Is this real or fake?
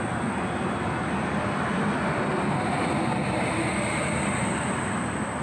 real